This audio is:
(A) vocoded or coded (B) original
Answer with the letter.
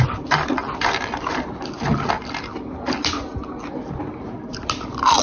B